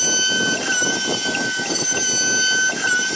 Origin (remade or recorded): recorded